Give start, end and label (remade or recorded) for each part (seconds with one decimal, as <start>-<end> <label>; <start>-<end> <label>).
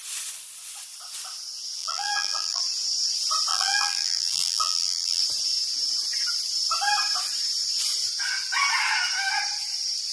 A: 0.0-1.8 recorded; 1.8-2.6 remade; 2.6-3.5 recorded; 3.5-5.2 remade; 5.2-10.1 recorded